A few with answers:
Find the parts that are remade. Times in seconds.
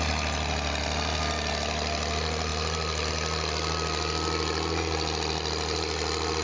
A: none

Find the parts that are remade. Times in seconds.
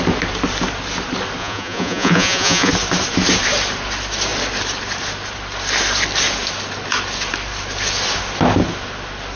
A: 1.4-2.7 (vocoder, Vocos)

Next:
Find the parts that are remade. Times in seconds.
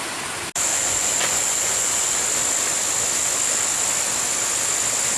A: 0.7-2.2 (vocoder, Vocos)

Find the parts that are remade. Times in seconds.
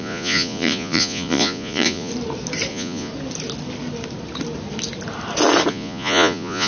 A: 0.0-2.1 (vocoder, Vocos); 2.7-3.1; 5.7-6.7